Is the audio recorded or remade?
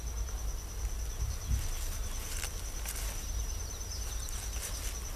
recorded